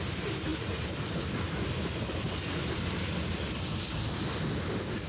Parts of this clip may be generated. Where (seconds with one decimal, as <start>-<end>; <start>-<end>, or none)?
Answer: none